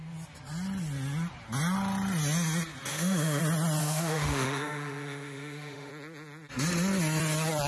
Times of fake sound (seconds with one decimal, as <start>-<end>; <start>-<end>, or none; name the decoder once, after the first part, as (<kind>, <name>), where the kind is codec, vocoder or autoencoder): 2.9-3.4 (autoencoder, DAC-VAE); 3.8-5.9